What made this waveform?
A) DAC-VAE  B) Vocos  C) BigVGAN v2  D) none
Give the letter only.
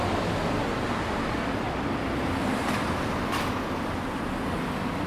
D